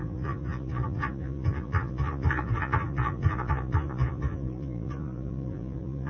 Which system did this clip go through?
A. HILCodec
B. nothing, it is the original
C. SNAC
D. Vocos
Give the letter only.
D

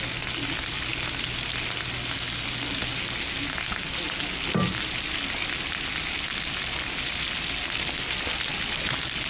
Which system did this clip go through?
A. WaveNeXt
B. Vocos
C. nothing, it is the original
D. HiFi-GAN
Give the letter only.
C